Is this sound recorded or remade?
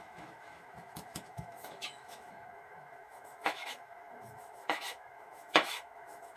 remade